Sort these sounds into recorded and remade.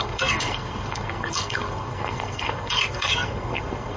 remade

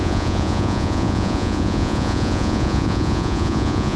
remade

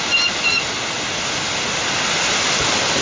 recorded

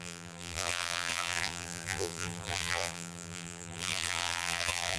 remade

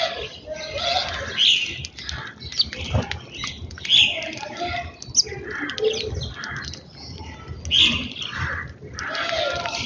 recorded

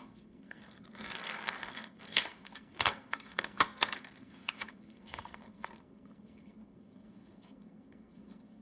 remade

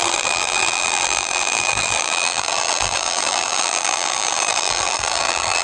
remade